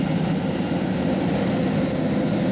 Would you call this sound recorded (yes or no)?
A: yes